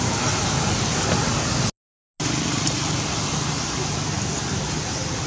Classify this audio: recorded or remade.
recorded